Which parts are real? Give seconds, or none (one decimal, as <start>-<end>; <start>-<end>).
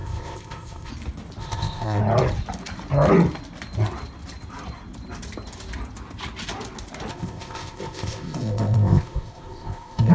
0.9-1.4; 2.0-7.1